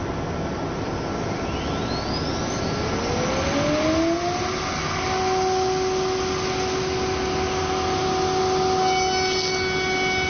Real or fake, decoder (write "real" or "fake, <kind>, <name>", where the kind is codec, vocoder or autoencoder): real